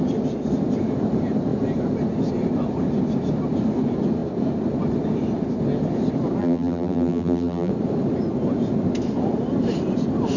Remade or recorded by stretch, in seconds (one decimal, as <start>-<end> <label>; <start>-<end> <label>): 0.0-6.4 recorded; 6.4-7.7 remade; 7.7-10.4 recorded

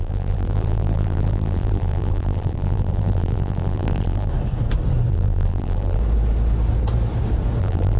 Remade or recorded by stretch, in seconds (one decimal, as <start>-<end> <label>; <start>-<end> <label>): 0.0-4.3 remade; 4.3-5.1 recorded; 5.1-6.0 remade; 6.0-7.6 recorded; 7.6-8.0 remade

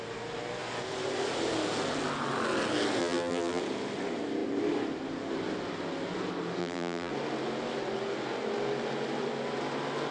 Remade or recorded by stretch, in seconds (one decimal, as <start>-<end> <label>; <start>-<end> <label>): 0.0-3.0 recorded; 3.0-3.6 remade; 3.6-6.6 recorded; 6.6-7.1 remade; 7.1-10.1 recorded

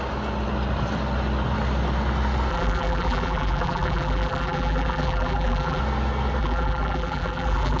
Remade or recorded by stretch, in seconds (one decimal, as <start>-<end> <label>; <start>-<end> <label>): 0.0-2.5 recorded; 2.5-5.8 remade; 5.8-6.4 recorded; 6.4-7.8 remade

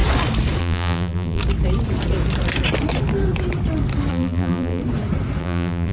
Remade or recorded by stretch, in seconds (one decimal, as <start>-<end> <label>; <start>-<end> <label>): 0.0-0.6 recorded; 0.6-1.4 remade; 1.4-4.1 recorded; 4.1-4.8 remade; 4.8-5.4 recorded; 5.4-5.9 remade